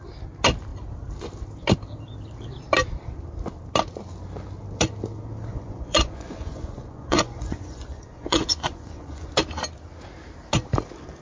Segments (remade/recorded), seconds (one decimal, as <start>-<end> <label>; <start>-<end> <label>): 0.0-5.5 recorded; 5.5-9.3 remade; 9.3-11.2 recorded